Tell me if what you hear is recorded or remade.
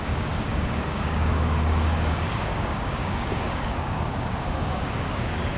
remade